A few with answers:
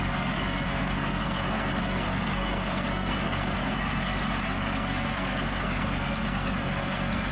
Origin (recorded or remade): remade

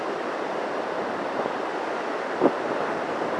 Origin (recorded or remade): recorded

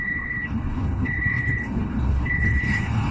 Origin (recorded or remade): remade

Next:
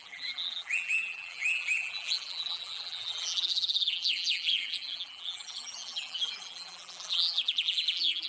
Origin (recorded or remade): remade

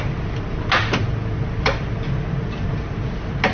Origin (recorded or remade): recorded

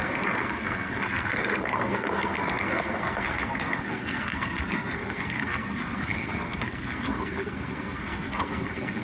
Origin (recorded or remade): remade